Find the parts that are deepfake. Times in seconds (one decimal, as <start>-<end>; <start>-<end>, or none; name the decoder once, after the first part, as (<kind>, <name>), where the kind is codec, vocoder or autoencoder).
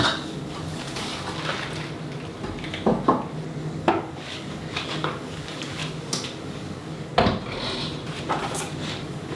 0.0-1.1 (codec, DAC); 3.6-5.8; 6.4-7.1; 8.4-9.4